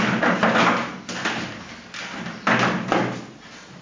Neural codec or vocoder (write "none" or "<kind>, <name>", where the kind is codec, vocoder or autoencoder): none